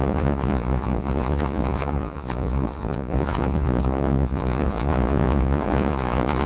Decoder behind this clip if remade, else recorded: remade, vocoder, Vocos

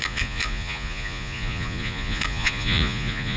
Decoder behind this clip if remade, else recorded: remade, vocoder, Vocos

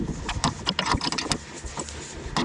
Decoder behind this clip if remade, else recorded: recorded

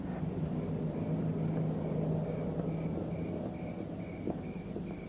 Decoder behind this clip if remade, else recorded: recorded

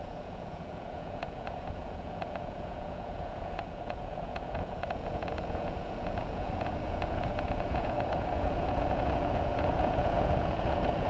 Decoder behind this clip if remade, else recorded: remade, vocoder, Vocos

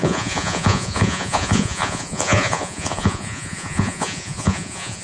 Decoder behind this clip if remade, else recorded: remade, vocoder, Vocos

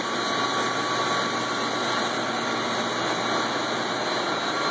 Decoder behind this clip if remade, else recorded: recorded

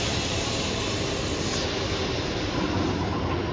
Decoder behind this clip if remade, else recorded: recorded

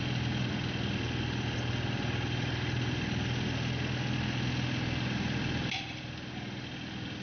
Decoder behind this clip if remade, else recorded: recorded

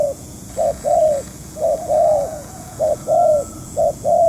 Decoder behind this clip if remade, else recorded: remade, vocoder, Vocos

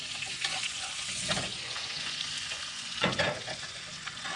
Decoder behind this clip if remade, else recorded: remade, vocoder, Vocos